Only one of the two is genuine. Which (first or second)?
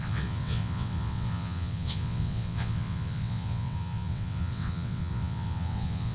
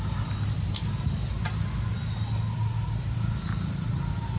second